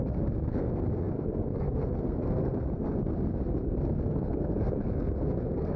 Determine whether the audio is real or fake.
fake